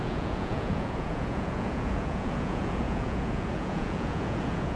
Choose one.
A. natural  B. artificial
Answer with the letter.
B